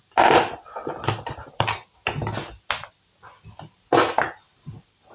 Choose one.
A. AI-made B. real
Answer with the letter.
B